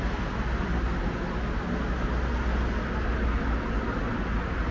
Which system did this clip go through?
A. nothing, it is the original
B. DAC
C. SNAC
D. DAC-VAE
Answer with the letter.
A